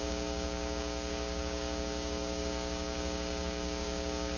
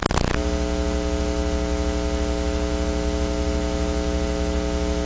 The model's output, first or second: first